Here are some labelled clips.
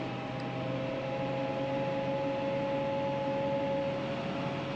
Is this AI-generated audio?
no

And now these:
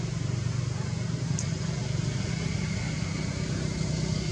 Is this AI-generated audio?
no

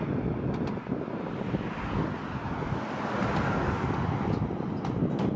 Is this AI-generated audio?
no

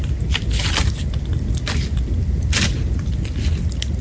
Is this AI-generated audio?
no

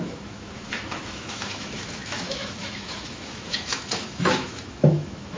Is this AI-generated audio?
yes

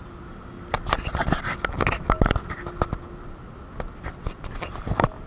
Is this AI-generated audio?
no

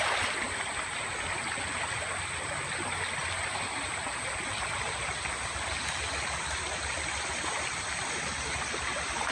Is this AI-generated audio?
no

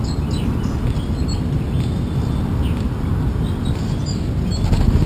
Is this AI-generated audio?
no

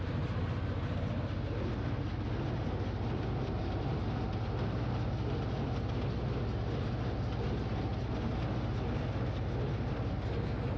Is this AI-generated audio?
no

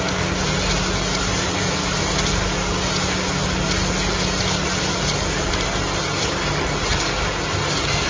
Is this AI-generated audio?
no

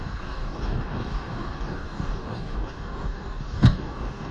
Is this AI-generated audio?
yes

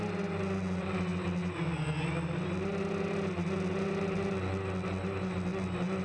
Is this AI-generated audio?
no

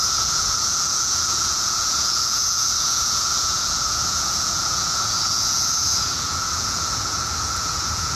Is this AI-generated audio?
yes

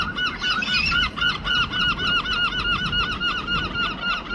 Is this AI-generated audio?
no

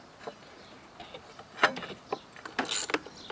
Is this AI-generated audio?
no